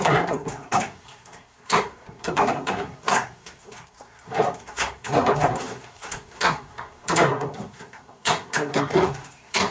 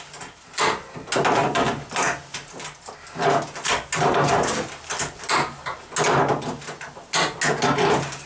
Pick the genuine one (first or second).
second